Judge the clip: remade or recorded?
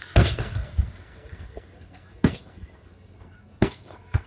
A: remade